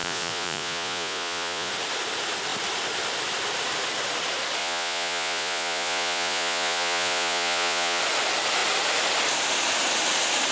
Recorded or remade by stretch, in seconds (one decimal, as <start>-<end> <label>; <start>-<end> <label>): 0.0-1.7 remade; 1.7-4.6 recorded; 4.6-8.0 remade; 8.0-10.5 recorded